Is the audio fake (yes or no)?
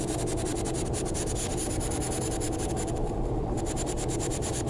yes